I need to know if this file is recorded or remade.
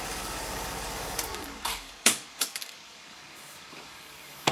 remade